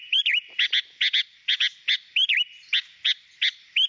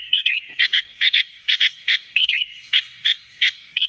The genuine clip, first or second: first